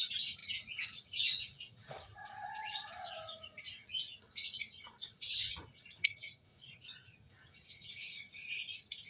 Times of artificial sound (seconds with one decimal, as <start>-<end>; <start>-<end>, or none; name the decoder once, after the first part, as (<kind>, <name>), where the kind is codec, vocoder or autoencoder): 0.0-9.1 (vocoder, Vocos)